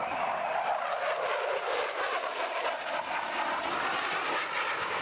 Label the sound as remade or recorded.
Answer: recorded